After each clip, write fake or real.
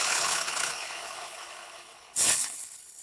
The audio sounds fake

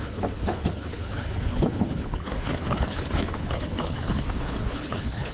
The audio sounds fake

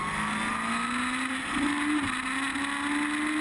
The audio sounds real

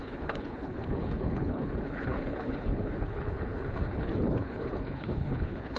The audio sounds fake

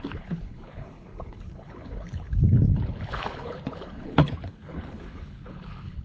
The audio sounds fake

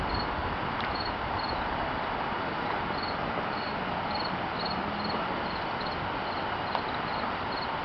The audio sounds real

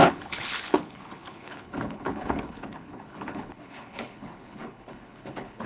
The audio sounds fake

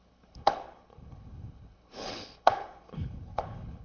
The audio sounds fake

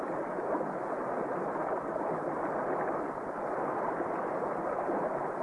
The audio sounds real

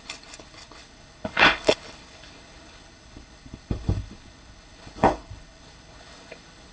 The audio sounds fake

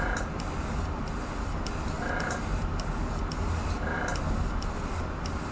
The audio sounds real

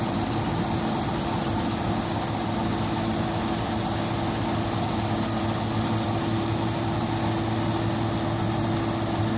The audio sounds real